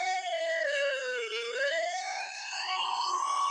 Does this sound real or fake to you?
fake